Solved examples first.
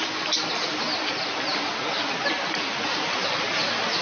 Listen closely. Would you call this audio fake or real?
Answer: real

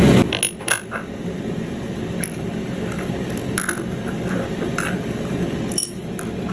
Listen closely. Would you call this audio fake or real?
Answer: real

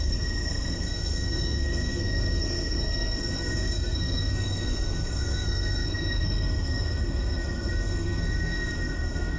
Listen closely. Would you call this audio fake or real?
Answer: fake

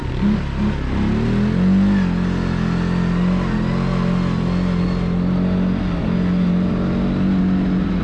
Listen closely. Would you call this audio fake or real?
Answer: real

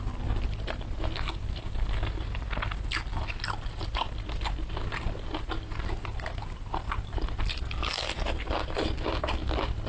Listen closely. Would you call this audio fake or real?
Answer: real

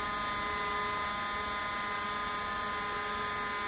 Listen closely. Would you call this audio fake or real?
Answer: real